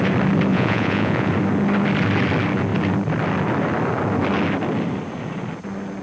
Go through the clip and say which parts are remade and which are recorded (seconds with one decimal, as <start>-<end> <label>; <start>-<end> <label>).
0.0-0.5 recorded; 0.5-1.3 remade; 1.3-6.0 recorded